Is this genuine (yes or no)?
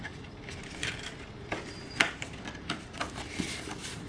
yes